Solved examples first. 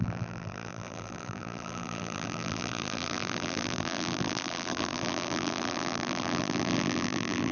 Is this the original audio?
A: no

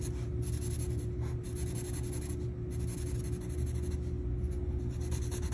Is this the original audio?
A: yes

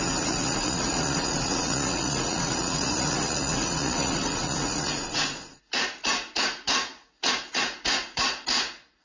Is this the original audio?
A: no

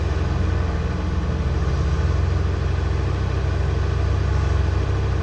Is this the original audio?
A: yes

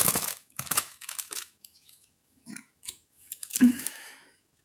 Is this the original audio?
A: no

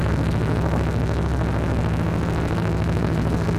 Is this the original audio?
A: no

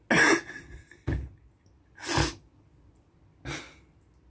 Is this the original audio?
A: yes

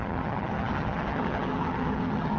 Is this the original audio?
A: no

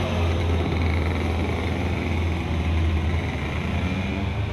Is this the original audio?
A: yes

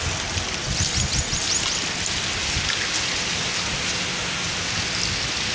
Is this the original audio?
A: yes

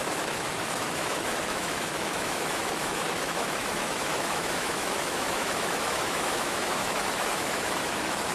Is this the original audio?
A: no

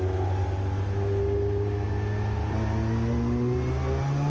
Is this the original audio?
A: yes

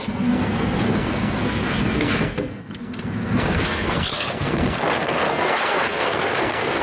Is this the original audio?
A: no